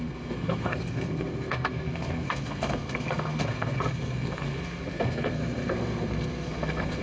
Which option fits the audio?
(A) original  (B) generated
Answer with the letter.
B